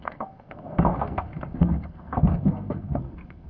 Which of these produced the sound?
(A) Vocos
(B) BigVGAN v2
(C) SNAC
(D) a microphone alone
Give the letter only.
C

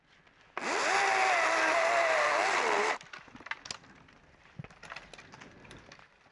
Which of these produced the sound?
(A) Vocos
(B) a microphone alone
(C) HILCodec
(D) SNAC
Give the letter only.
B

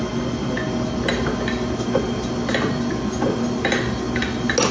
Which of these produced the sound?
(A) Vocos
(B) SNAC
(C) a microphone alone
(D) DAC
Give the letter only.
C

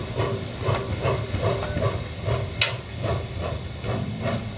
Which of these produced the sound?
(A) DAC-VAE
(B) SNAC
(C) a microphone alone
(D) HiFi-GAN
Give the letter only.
C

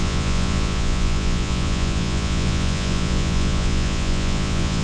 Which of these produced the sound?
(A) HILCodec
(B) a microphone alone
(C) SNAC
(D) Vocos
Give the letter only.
D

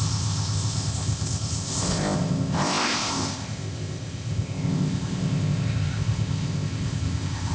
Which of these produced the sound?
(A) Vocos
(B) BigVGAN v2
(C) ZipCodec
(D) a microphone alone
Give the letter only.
C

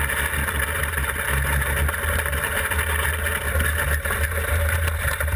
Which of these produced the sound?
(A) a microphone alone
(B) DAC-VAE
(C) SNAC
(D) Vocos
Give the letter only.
A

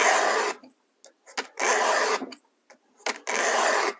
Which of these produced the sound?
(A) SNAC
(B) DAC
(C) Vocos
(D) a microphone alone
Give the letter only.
D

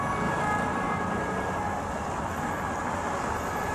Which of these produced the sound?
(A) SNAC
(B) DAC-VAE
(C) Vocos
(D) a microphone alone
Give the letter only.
D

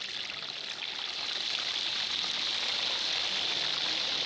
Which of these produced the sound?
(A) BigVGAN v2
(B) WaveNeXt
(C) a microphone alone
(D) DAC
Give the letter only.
C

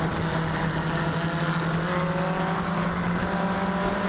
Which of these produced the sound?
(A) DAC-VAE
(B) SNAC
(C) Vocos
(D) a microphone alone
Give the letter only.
D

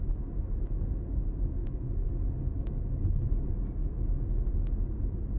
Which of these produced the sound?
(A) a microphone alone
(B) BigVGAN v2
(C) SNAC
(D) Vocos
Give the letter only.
A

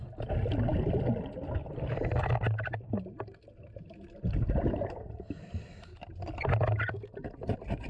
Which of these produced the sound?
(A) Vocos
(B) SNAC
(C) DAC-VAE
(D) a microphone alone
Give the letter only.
D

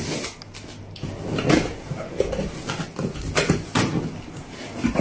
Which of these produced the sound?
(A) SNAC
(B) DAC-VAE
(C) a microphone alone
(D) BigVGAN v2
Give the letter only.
C